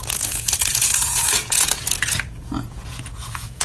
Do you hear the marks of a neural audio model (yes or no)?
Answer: yes